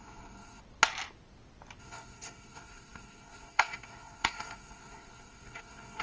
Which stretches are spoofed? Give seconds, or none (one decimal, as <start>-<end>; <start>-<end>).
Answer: 0.0-0.6; 1.8-6.0